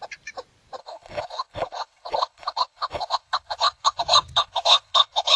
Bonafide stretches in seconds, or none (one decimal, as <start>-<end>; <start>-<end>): 0.0-0.8; 4.0-4.4